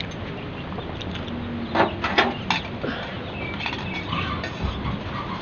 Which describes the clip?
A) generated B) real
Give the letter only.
B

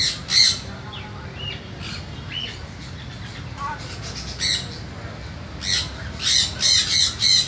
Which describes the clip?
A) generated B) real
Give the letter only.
B